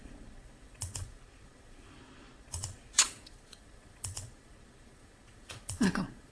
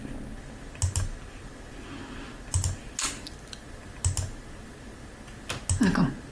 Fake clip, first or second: first